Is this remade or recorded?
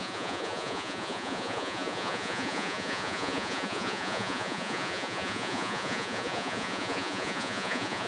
remade